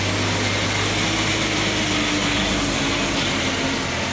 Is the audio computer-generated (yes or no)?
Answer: no